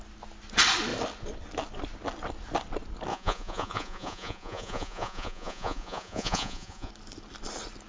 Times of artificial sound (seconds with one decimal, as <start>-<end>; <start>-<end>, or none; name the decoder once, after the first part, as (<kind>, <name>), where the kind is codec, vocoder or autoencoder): 3.1-6.9 (vocoder, Vocos)

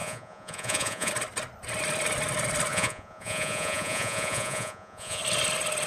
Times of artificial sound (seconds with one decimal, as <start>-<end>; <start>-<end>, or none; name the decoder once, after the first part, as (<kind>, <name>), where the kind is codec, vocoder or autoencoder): 0.0-1.1 (vocoder, Vocos); 2.7-5.2

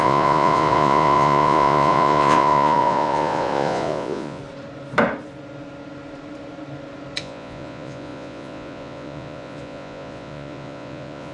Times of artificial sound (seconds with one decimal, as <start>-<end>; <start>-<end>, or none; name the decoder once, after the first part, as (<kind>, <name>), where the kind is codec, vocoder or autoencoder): 0.0-4.4 (vocoder, Vocos); 7.2-11.3

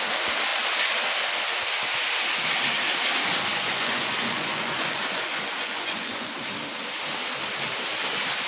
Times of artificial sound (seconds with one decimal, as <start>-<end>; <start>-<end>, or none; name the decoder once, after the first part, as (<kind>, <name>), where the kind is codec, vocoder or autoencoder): 3.5-6.4 (vocoder, Vocos)

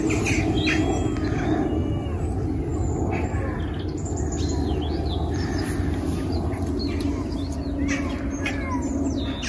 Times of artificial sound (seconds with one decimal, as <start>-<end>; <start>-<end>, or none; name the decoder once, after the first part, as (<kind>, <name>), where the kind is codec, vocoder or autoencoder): none

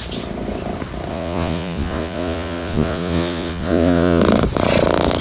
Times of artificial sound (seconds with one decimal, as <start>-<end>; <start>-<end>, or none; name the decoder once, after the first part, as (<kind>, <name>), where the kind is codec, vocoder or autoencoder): 1.1-4.2 (vocoder, Vocos)

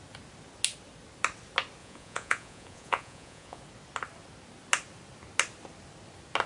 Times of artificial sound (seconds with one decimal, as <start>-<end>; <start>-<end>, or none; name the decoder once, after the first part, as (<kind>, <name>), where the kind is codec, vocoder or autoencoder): 1.8-3.6 (vocoder, Vocos)